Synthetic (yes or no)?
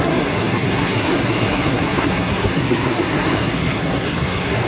yes